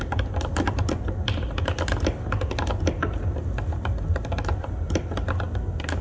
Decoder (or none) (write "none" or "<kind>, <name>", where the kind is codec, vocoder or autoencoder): none